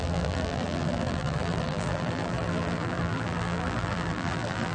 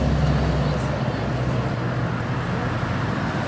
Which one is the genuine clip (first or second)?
second